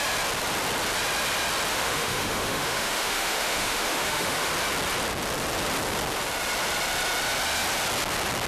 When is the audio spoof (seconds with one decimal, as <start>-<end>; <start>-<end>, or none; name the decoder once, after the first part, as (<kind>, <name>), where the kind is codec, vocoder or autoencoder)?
1.7-4.5 (autoencoder, DAC-VAE)